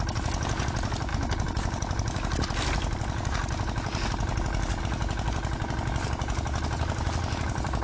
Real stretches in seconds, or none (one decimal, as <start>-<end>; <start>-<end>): 0.0-7.8